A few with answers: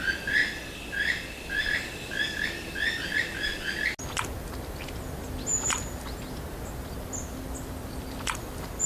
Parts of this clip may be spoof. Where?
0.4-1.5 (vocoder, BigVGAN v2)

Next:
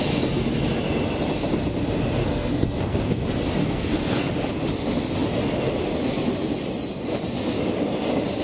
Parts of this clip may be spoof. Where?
2.2-3.2 (codec, SNAC); 3.6-4.3

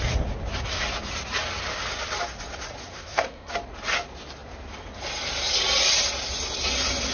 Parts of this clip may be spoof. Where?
2.9-3.5 (codec, SNAC)

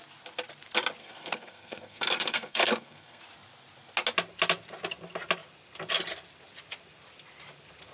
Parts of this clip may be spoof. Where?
1.0-3.2 (codec, SNAC)

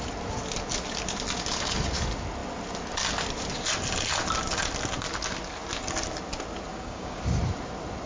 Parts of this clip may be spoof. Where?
6.7-7.2 (codec, DAC)